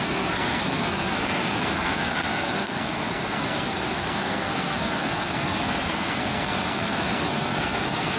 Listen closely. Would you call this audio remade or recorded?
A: remade